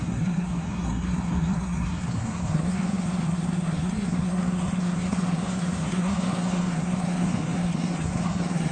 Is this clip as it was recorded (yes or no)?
no